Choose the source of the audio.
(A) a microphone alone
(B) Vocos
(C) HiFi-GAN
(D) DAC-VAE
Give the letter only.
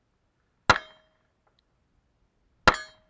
A